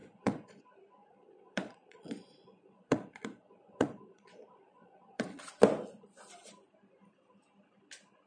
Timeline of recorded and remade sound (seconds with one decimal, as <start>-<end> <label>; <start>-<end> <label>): 0.0-0.6 remade; 0.6-1.0 recorded; 1.0-5.5 remade; 5.5-8.3 recorded